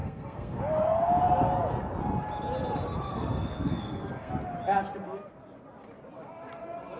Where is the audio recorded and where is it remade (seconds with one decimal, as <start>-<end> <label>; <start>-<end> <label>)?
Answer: 0.0-0.6 remade; 0.6-3.1 recorded; 3.1-4.3 remade; 4.3-7.0 recorded